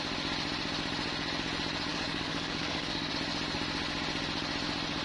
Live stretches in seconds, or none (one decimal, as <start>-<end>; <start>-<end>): 0.0-1.9; 3.1-5.0